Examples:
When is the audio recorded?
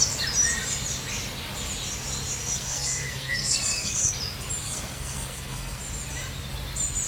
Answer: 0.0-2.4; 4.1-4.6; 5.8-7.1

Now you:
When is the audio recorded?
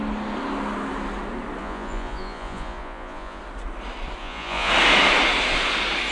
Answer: 0.0-1.6; 3.4-4.2; 4.7-6.1